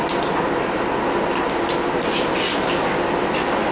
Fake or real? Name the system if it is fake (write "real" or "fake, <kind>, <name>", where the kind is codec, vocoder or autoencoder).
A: real